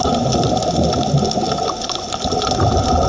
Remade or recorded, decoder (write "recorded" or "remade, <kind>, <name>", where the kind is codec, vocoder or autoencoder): recorded